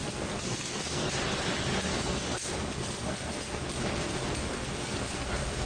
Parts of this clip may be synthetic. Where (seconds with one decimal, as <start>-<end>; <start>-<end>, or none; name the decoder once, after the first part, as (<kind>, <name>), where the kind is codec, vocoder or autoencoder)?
0.0-1.1 (codec, SNAC); 1.9-3.6; 4.5-5.7